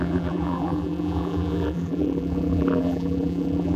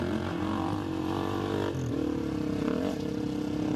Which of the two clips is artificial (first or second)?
first